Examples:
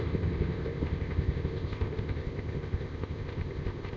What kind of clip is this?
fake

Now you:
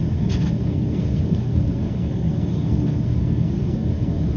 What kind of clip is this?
fake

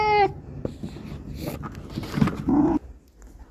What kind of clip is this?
real